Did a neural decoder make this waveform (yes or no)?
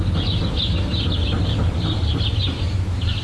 no